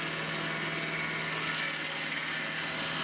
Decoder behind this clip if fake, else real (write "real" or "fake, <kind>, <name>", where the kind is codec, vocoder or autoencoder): real